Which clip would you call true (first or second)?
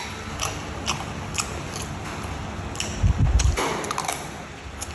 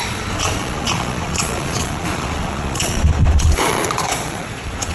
first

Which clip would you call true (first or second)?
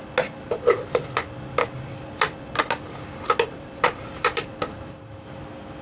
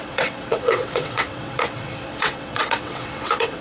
first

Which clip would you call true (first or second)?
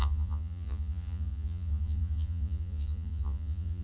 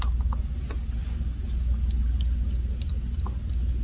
second